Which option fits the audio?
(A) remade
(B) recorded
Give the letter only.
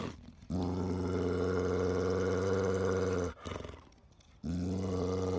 B